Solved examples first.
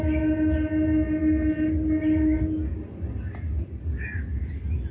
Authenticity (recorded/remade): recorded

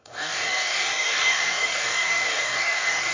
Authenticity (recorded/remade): remade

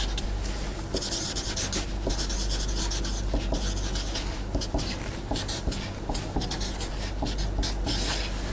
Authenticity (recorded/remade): recorded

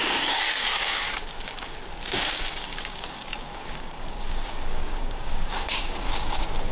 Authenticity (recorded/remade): remade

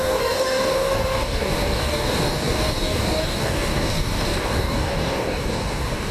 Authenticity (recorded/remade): remade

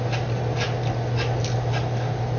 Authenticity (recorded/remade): recorded